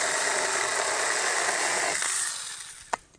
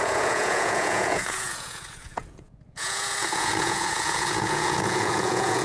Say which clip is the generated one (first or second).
second